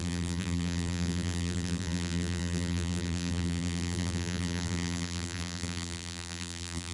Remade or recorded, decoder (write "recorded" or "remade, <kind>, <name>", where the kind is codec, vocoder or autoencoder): remade, vocoder, BigVGAN v2